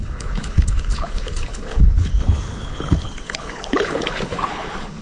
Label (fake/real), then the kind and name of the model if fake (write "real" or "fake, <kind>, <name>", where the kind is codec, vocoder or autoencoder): fake, codec, HILCodec